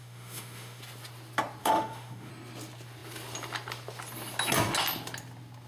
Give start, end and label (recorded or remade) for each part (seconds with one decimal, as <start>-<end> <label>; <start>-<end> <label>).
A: 0.0-0.8 remade; 0.8-1.6 recorded; 1.6-2.3 remade; 2.3-5.7 recorded